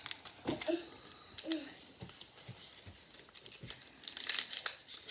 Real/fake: real